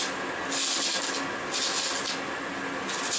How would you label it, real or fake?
real